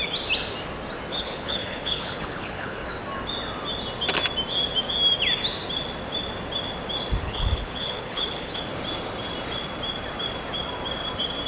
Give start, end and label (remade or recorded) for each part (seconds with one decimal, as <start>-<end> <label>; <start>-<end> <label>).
0.0-1.1 recorded; 1.1-2.9 remade; 2.9-7.2 recorded; 7.2-8.6 remade; 8.6-11.5 recorded